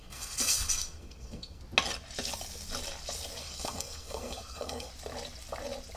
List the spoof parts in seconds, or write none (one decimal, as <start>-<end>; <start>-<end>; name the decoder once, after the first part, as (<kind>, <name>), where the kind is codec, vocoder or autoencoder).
0.0-1.6 (codec, SNAC); 3.4-4.9